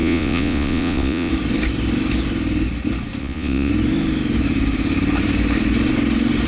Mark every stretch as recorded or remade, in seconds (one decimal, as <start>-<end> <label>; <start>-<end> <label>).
0.0-1.3 remade; 1.3-3.2 recorded; 3.2-3.7 remade; 3.7-6.5 recorded